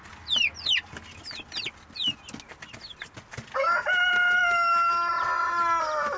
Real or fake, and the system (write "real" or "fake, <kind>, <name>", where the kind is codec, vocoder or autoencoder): real